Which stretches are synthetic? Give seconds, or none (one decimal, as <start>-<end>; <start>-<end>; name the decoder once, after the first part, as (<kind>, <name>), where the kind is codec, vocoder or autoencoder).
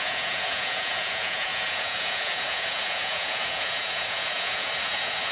0.0-5.3 (vocoder, Vocos)